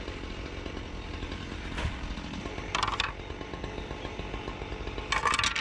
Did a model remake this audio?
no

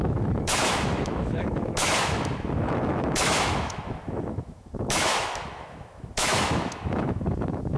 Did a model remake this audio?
yes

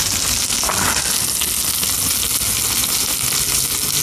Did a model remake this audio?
no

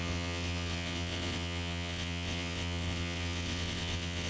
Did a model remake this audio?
yes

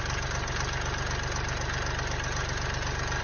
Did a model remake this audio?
no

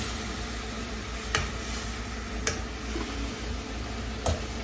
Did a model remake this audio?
no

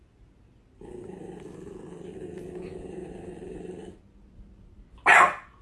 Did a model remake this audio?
no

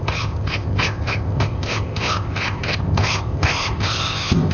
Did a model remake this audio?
yes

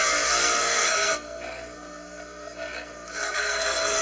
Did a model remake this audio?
yes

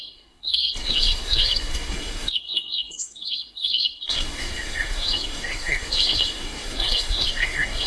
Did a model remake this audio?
yes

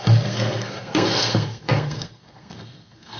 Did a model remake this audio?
yes